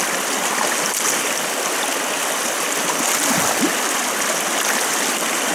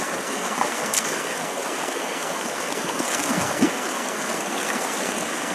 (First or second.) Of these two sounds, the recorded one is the first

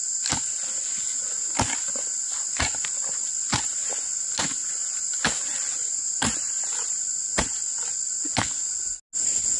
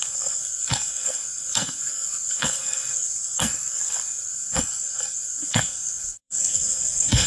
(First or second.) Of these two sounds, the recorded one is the first